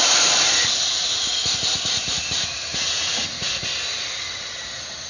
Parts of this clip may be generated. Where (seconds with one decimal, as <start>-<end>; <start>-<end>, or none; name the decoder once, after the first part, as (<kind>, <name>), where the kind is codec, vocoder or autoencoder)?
2.7-3.7 (vocoder, Vocos)